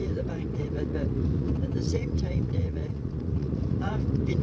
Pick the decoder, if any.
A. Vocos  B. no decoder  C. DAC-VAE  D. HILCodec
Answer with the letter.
A